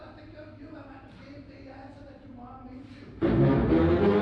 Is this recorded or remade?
recorded